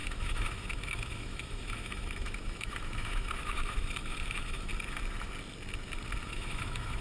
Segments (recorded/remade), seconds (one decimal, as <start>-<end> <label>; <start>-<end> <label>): 0.0-4.7 remade; 4.7-6.3 recorded; 6.3-7.0 remade